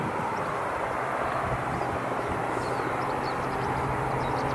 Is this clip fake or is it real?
real